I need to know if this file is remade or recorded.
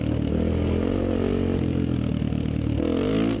recorded